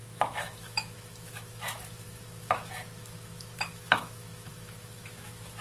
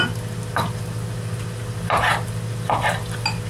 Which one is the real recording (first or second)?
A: second